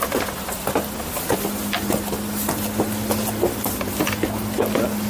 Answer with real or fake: real